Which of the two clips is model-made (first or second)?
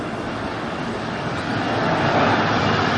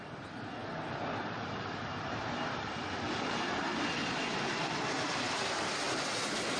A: second